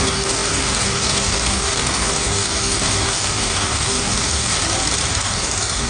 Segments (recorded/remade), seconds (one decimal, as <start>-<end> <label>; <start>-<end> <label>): 0.0-4.6 remade; 4.6-5.1 recorded; 5.1-5.9 remade